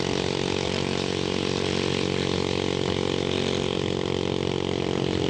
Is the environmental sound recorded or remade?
recorded